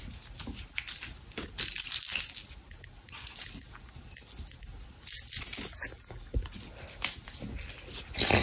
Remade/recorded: recorded